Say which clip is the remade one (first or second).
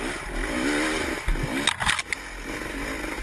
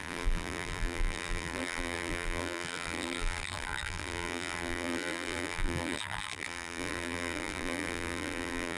second